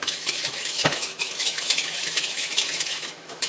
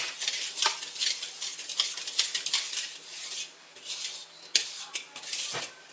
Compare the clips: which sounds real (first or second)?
second